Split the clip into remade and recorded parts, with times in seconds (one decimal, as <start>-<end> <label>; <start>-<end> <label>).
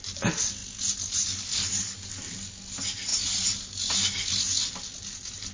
0.0-5.5 recorded